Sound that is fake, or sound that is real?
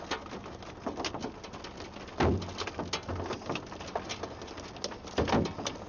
real